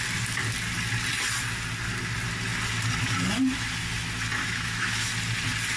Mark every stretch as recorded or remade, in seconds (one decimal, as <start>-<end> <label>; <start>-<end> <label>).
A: 0.0-4.4 recorded; 4.4-5.1 remade; 5.1-5.8 recorded